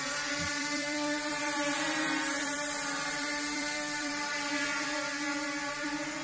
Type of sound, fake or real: fake